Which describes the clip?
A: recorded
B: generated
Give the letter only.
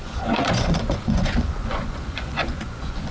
B